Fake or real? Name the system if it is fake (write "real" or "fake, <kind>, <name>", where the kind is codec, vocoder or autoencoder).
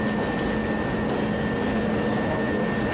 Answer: real